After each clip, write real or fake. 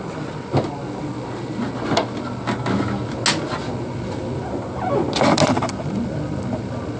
real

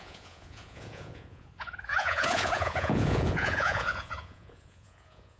fake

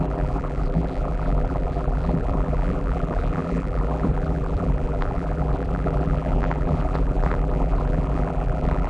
fake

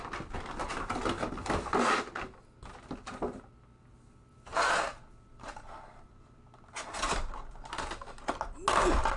real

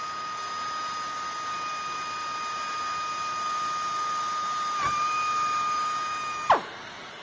real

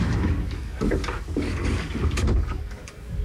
fake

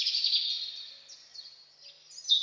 real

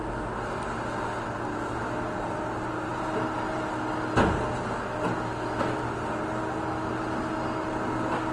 real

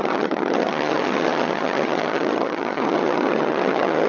fake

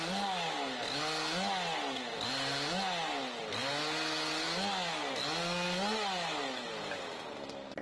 real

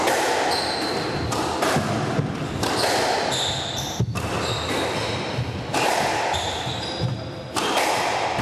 real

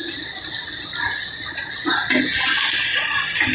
real